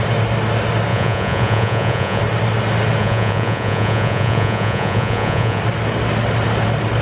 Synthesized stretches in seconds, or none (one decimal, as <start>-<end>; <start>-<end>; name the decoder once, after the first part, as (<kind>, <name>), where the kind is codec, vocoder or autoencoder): 0.9-2.2 (vocoder, Vocos); 3.0-5.6